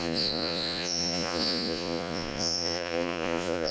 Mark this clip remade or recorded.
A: remade